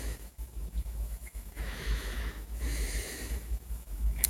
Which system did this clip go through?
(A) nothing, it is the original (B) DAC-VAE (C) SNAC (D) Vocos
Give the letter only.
B